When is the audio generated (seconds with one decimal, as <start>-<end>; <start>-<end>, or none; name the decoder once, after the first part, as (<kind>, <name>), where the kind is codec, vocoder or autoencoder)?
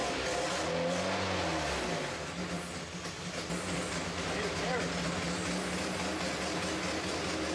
none